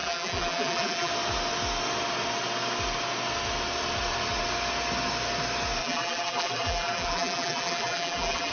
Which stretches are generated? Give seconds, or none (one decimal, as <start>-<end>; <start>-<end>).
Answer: 0.0-1.1; 5.8-8.5